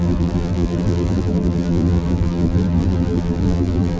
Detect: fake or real fake